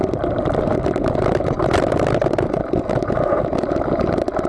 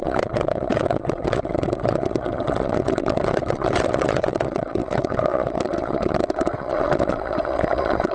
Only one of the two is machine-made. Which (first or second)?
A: second